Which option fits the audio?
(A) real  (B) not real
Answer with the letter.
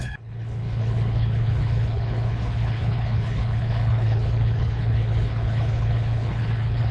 B